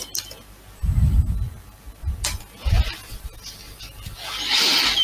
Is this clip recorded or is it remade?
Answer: recorded